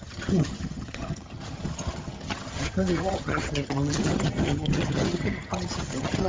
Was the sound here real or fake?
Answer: fake